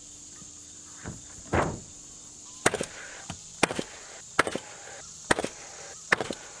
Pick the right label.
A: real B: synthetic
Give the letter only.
B